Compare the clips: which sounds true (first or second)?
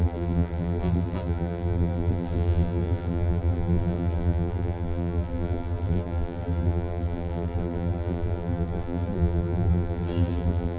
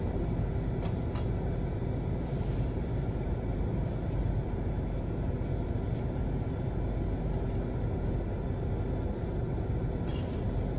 second